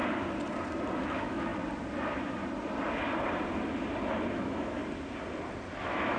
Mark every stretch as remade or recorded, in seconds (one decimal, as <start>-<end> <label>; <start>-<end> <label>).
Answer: 0.0-1.0 recorded; 1.0-1.5 remade; 1.5-4.3 recorded; 4.3-4.8 remade; 4.8-5.8 recorded; 5.8-6.2 remade